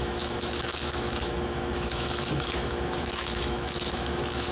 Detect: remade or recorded remade